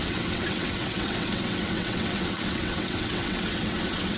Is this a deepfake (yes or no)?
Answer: yes